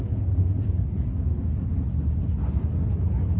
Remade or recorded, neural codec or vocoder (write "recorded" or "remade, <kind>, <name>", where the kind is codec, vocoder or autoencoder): recorded